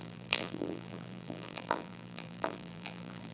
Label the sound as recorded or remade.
remade